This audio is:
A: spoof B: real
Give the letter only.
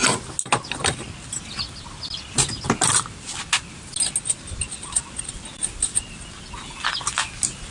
B